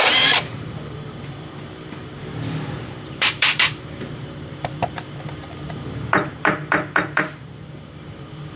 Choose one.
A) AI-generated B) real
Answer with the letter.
A